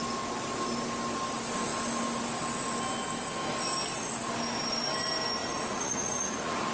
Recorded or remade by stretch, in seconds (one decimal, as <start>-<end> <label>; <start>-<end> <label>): 0.0-5.4 recorded; 5.4-6.7 remade